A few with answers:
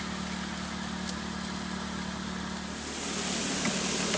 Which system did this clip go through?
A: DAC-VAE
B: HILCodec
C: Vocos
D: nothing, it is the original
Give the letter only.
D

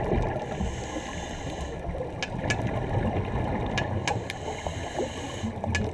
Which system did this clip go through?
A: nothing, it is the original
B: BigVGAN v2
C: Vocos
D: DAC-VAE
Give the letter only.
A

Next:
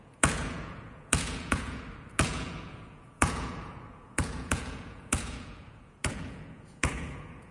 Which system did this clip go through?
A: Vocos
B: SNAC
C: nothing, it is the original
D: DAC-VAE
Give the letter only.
A